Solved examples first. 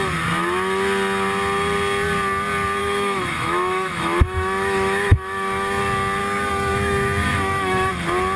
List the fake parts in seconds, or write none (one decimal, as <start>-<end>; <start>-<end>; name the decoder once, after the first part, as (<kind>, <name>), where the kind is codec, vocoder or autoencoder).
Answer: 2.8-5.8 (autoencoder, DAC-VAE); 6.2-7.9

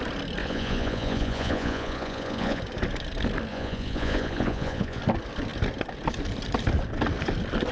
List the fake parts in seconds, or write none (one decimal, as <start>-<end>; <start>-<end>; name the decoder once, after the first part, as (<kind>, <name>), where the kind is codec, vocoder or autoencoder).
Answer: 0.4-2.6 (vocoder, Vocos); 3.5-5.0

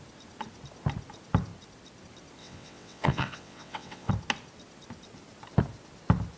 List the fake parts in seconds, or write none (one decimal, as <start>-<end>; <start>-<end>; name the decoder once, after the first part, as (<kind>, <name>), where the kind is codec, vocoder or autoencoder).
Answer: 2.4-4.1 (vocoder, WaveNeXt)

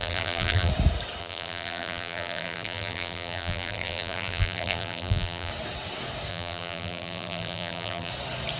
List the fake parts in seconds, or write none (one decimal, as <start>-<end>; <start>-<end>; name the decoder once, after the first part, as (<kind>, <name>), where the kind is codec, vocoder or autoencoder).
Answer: 0.0-0.7 (vocoder, BigVGAN v2); 1.2-5.5; 6.3-8.1

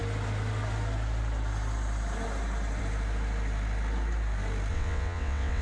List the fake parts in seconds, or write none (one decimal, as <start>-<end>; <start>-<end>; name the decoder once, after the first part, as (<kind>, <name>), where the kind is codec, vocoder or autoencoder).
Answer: 4.7-5.6 (vocoder, WaveNeXt)

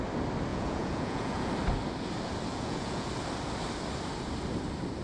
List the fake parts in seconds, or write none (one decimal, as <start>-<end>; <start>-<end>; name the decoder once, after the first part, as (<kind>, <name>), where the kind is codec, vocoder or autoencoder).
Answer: 0.5-1.5 (vocoder, Vocos); 2.5-3.1